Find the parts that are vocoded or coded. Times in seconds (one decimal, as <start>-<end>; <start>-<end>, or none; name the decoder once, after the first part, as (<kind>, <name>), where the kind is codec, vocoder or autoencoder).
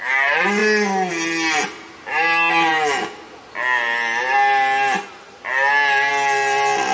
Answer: none